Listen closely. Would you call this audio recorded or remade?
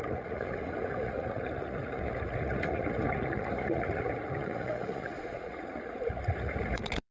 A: remade